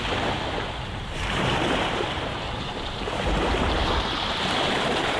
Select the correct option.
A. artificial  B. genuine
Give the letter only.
A